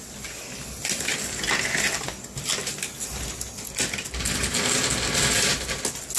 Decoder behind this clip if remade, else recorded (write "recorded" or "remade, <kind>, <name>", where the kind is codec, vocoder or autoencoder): recorded